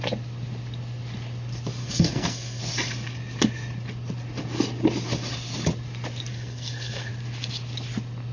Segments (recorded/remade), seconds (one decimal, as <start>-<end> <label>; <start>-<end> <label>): 0.0-1.8 recorded; 1.8-2.6 remade; 2.6-6.3 recorded; 6.3-7.1 remade; 7.1-8.3 recorded